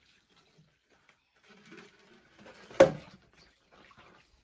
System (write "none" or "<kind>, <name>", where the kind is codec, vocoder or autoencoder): none